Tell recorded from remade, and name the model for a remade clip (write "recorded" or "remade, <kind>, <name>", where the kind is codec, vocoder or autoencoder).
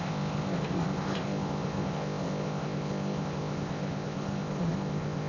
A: remade, codec, ZipCodec